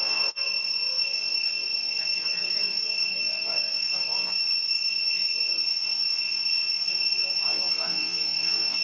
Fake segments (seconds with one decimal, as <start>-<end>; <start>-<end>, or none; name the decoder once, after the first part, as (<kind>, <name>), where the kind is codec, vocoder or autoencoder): 0.0-8.8 (vocoder, WaveNeXt)